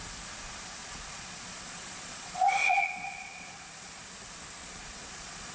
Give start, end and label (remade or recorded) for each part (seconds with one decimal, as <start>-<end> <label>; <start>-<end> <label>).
0.0-0.8 recorded; 0.8-4.1 remade; 4.1-4.6 recorded; 4.6-5.5 remade